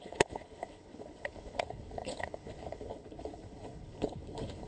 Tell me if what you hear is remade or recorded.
remade